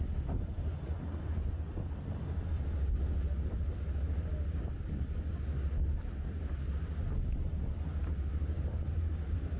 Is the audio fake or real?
real